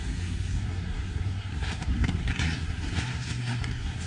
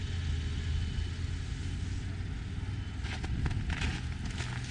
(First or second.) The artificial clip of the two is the first